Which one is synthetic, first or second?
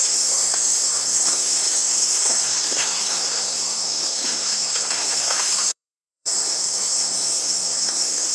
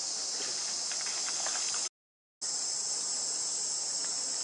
first